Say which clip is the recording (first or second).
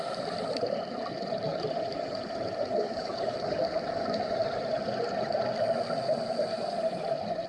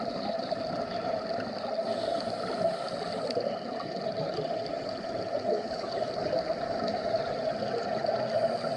second